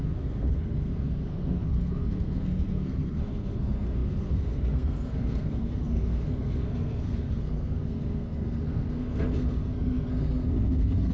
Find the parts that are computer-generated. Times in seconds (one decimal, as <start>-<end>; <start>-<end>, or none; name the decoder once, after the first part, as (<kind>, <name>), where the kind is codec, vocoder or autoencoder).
0.0-11.1 (codec, SNAC)